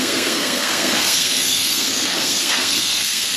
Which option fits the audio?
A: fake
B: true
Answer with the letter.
A